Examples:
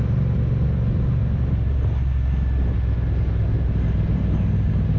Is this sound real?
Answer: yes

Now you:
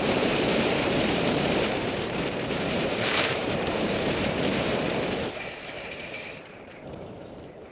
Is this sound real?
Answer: no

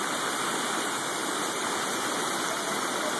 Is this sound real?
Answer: yes